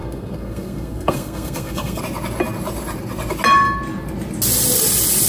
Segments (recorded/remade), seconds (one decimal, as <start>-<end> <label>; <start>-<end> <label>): 0.0-2.0 remade; 2.0-5.3 recorded